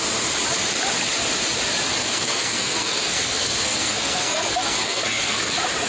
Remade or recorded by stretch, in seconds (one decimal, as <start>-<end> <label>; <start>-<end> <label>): 0.0-2.0 recorded; 2.0-5.5 remade; 5.5-5.9 recorded